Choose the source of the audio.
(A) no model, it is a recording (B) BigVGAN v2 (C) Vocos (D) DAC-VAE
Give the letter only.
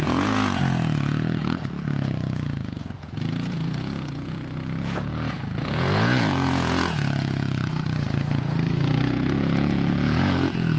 C